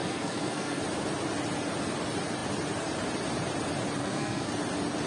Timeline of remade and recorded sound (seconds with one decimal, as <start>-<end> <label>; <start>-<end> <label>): 0.0-0.8 remade; 0.8-4.0 recorded; 4.0-4.5 remade; 4.5-5.1 recorded